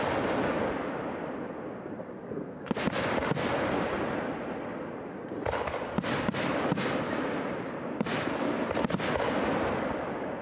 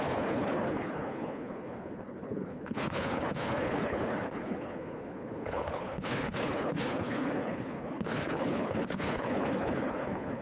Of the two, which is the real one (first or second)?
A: first